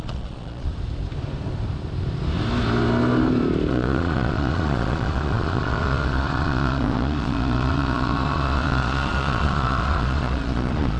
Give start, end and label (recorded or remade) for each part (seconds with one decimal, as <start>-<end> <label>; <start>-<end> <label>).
0.0-0.7 remade; 0.7-3.7 recorded; 3.7-11.0 remade